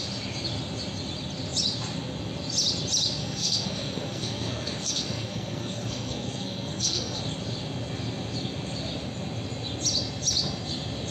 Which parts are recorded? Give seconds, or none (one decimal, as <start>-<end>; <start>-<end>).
0.0-3.2; 7.2-11.1